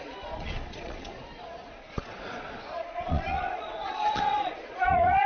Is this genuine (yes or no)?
no